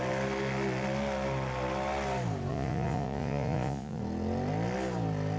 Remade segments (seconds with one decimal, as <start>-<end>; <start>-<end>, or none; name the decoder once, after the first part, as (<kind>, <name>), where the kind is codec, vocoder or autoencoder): 2.5-4.0 (vocoder, Vocos)